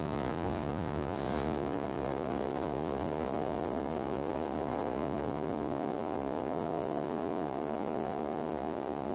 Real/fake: fake